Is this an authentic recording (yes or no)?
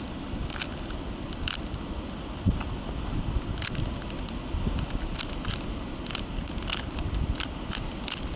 yes